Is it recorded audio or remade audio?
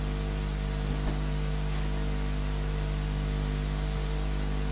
recorded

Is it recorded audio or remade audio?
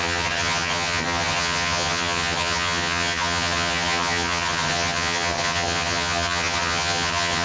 remade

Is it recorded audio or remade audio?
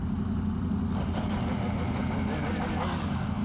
recorded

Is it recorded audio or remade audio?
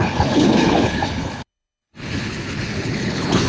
remade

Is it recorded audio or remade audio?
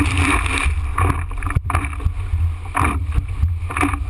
recorded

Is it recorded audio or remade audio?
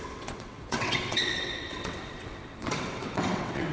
remade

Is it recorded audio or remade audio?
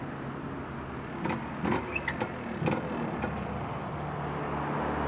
recorded